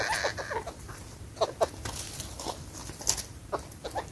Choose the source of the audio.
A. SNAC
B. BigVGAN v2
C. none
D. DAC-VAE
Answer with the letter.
C